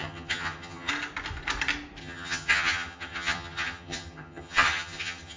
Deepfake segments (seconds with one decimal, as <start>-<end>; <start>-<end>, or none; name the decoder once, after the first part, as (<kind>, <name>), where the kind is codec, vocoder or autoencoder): 0.0-0.9 (vocoder, HiFi-GAN); 2.0-5.4